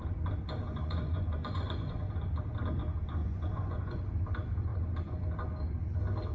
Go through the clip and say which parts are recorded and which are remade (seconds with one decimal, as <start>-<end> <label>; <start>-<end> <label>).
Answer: 0.0-0.7 recorded; 0.7-2.1 remade; 2.1-3.2 recorded; 3.2-4.0 remade; 4.0-6.3 recorded